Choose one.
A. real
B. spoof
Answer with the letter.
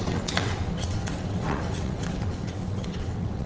B